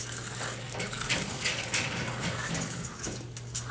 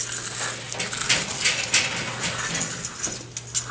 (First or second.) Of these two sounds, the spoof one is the first